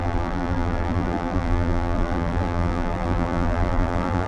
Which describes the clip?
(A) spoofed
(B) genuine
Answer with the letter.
A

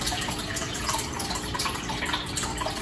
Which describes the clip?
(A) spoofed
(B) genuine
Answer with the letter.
B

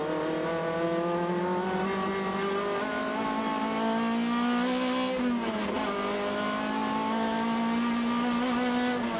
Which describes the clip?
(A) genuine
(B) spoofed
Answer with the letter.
A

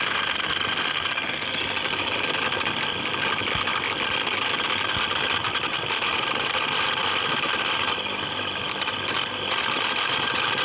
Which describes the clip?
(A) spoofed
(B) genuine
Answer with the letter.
B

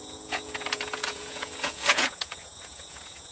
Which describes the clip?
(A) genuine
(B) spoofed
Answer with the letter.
B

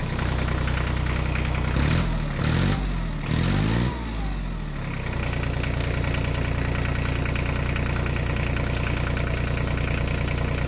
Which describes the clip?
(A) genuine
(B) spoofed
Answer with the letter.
A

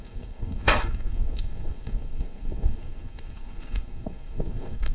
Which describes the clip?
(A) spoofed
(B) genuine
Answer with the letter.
A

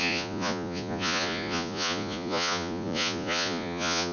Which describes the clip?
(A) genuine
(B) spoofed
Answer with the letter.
B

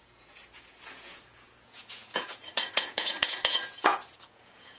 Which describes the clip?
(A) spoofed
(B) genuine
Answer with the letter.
A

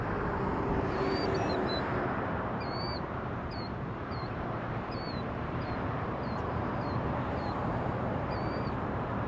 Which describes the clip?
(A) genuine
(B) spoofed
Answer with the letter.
B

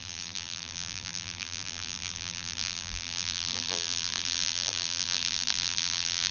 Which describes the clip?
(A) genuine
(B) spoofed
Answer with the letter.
B